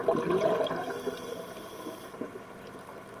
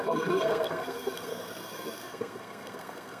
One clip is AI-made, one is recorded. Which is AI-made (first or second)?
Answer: second